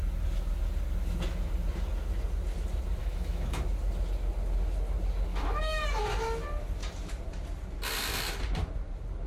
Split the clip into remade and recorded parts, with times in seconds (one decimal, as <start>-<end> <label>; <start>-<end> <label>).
0.0-3.0 recorded; 3.0-3.6 remade; 3.6-5.3 recorded; 5.3-6.0 remade; 6.0-9.3 recorded